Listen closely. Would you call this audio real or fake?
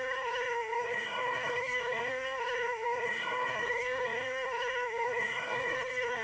fake